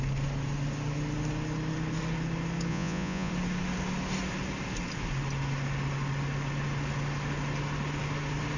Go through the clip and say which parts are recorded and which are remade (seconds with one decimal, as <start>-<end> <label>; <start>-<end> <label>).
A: 0.0-2.7 recorded; 2.7-3.3 remade; 3.3-8.6 recorded